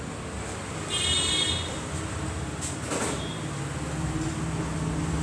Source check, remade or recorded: recorded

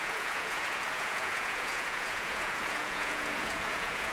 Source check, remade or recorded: remade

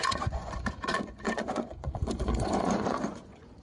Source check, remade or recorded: remade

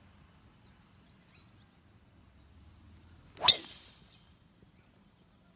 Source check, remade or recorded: recorded